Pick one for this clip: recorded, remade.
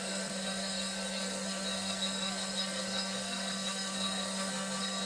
remade